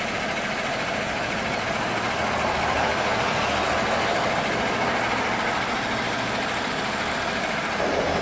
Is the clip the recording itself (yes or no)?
yes